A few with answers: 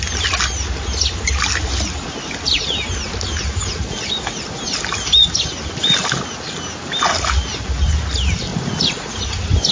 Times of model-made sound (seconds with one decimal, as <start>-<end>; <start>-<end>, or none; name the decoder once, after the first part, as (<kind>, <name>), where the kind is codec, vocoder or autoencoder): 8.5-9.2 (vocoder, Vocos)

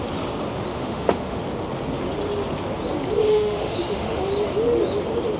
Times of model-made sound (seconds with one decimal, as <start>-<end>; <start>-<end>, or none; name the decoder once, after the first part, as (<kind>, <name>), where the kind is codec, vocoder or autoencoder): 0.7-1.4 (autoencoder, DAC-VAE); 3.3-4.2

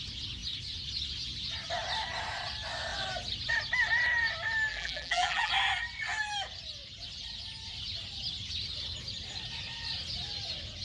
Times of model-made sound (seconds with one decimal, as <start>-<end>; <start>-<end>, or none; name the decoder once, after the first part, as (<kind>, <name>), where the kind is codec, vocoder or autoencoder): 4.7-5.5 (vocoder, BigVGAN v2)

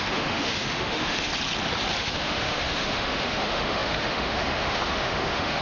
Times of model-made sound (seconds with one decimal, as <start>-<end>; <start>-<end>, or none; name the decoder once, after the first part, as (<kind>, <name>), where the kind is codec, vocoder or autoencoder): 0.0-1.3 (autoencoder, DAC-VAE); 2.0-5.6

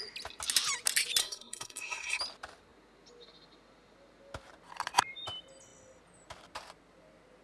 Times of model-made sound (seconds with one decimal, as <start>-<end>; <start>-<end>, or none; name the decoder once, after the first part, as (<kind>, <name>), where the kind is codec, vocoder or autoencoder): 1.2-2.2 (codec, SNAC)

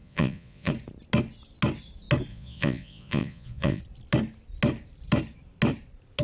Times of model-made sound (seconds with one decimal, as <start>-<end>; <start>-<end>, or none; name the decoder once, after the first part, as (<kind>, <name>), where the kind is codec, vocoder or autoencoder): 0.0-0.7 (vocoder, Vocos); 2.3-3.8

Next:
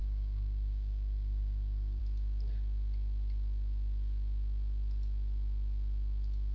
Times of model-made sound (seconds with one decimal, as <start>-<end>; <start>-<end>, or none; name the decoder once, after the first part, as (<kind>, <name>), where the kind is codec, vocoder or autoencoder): 0.0-2.0 (codec, DAC)